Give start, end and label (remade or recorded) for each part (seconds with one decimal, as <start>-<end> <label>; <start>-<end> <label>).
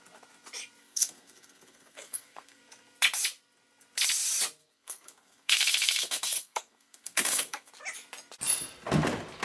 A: 0.0-0.8 recorded; 0.8-2.6 remade; 2.6-4.6 recorded; 4.6-7.7 remade; 7.7-9.4 recorded